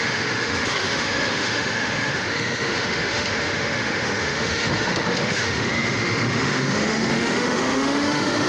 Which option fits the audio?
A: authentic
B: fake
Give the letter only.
B